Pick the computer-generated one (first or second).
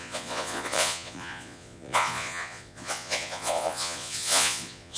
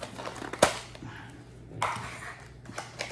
first